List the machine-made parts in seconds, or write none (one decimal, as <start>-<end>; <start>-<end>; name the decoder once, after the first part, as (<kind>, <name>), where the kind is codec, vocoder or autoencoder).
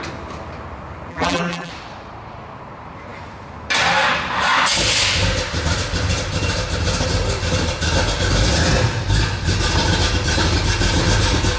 1.1-1.7 (vocoder, BigVGAN v2)